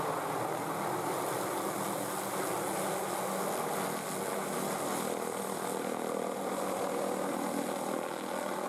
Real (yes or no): yes